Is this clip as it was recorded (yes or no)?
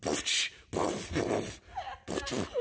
yes